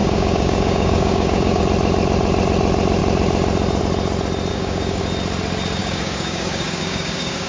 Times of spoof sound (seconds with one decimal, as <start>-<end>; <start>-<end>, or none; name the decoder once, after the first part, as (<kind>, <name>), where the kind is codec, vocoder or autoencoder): 0.0-1.6 (codec, DAC); 4.5-5.0; 5.8-7.5